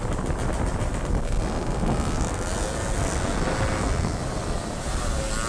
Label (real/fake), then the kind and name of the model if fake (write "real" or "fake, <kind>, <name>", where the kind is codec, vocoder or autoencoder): real